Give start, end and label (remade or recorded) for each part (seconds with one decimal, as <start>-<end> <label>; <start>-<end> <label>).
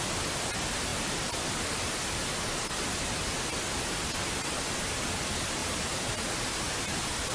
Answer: 0.0-7.3 recorded